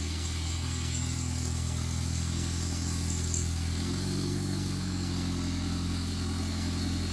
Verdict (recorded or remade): remade